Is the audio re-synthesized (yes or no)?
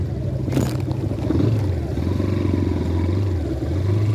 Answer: no